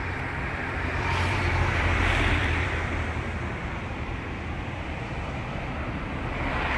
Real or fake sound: fake